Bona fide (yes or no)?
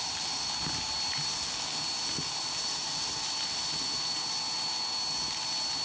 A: yes